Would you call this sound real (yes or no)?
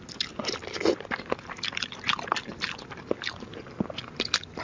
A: yes